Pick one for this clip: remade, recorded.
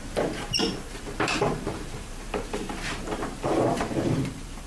remade